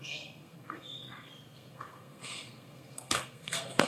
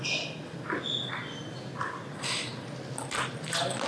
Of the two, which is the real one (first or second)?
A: second